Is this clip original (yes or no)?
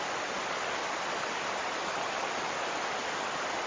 yes